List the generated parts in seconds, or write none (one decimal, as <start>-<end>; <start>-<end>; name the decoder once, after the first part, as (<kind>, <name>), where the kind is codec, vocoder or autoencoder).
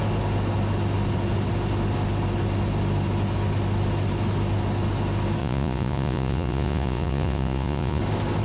5.4-8.0 (vocoder, Vocos)